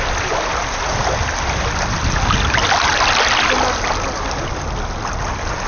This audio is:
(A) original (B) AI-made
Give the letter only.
A